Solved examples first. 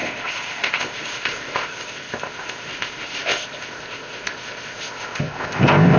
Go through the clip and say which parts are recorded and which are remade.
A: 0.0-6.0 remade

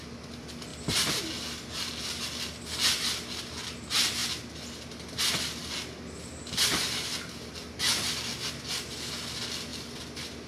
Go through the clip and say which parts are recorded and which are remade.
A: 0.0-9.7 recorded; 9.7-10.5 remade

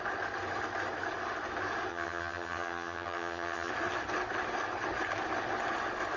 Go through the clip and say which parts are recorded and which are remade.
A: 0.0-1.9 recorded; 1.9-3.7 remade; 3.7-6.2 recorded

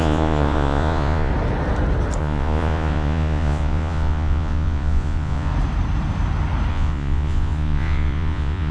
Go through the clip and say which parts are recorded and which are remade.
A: 0.0-1.3 remade; 1.3-2.2 recorded; 2.2-5.5 remade; 5.5-6.7 recorded; 6.7-8.7 remade

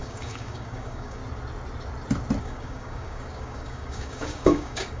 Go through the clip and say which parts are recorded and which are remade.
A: 0.0-1.2 remade; 1.2-2.4 recorded; 2.4-5.0 remade

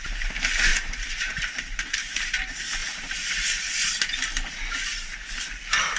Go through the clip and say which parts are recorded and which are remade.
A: 0.0-0.7 recorded; 0.7-2.4 remade; 2.4-2.8 recorded; 2.8-3.6 remade; 3.6-6.0 recorded

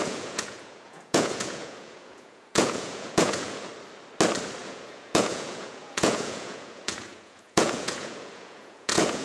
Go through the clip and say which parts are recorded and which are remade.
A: 0.0-3.7 remade; 3.7-4.6 recorded; 4.6-9.2 remade